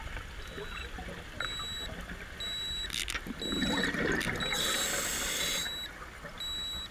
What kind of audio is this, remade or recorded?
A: recorded